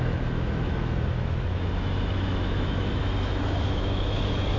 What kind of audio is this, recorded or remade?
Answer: remade